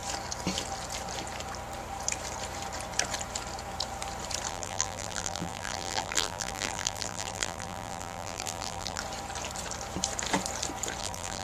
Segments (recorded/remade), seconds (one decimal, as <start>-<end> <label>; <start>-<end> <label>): 0.0-4.5 recorded; 4.5-9.0 remade; 9.0-11.0 recorded; 11.0-11.4 remade